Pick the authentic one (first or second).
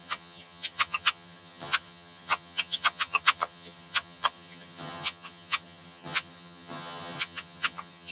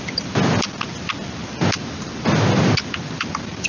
second